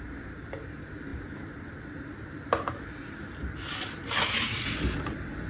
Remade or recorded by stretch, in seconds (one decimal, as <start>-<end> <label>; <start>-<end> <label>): 0.0-5.5 recorded